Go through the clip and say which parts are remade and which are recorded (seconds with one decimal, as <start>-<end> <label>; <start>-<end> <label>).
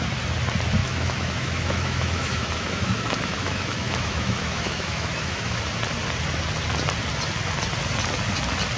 0.0-0.8 recorded; 0.8-5.6 remade; 5.6-8.8 recorded